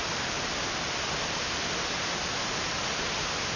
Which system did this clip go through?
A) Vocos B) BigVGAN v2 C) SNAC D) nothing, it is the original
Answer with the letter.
D